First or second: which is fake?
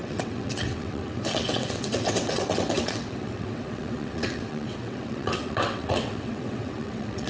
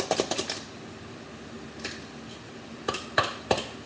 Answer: first